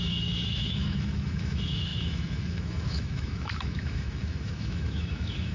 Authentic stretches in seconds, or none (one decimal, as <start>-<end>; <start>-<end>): none